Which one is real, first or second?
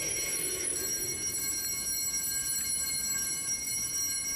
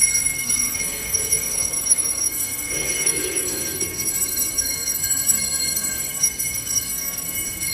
first